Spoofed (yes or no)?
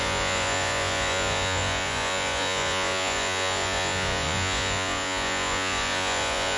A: yes